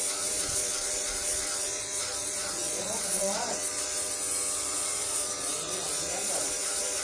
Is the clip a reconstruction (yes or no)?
yes